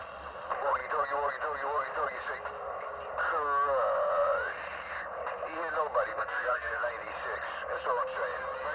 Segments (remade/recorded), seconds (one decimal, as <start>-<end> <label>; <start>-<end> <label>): 0.0-6.1 recorded; 6.1-6.8 remade; 6.8-8.7 recorded